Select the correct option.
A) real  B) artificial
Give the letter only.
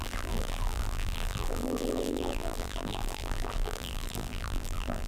B